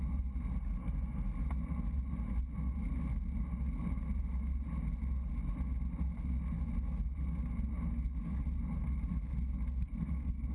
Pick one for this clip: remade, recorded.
recorded